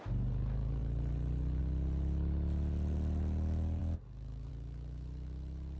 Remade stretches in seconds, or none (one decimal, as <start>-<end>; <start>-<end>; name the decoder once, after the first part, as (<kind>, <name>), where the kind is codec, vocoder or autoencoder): none